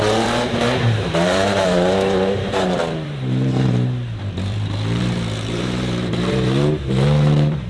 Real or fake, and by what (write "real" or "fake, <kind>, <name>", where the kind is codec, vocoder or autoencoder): fake, vocoder, BigVGAN v2